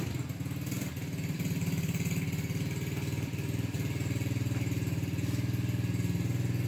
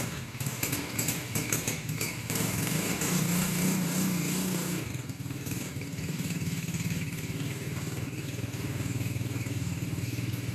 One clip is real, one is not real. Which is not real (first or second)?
second